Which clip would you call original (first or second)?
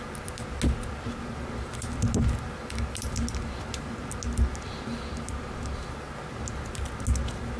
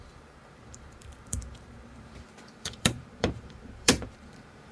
first